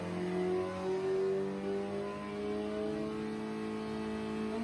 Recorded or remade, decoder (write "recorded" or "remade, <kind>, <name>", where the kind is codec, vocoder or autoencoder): recorded